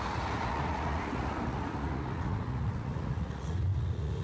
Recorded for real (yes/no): no